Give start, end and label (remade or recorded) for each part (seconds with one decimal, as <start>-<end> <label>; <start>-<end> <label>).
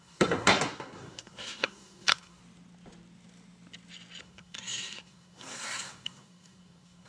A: 0.0-2.4 remade; 2.4-4.2 recorded; 4.2-7.1 remade